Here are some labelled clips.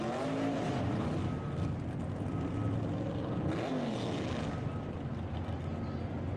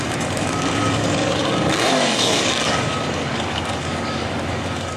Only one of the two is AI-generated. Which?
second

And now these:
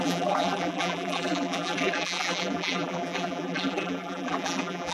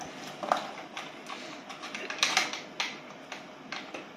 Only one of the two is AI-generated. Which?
first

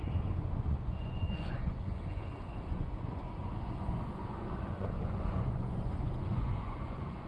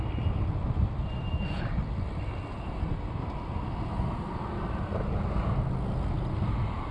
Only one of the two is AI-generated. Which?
first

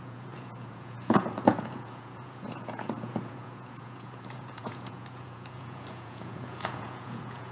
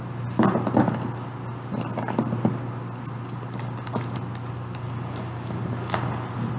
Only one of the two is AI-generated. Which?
first